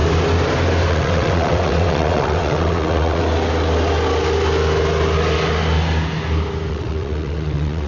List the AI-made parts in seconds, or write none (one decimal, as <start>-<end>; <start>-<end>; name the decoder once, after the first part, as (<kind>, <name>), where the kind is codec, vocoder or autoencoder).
0.9-3.2 (vocoder, WaveNeXt); 6.7-7.9

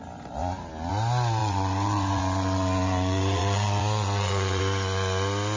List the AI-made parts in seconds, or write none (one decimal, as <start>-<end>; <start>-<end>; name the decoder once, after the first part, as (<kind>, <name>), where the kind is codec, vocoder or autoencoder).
1.4-4.6 (vocoder, Vocos)

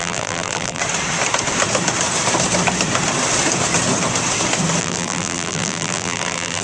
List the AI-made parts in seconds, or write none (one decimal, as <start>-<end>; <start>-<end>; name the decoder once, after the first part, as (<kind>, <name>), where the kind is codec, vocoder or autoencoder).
0.0-0.8 (vocoder, BigVGAN v2); 4.8-6.6

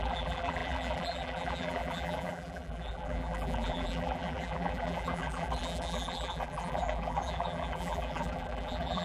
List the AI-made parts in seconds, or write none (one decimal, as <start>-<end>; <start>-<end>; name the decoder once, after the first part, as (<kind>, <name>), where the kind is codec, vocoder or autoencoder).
0.0-9.0 (vocoder, BigVGAN v2)